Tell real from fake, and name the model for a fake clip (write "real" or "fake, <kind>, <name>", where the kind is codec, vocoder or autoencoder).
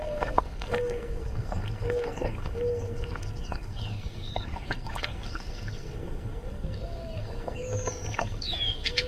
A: fake, codec, SNAC